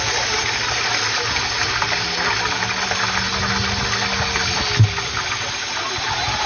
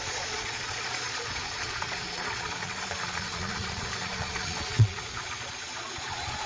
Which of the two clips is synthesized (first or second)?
second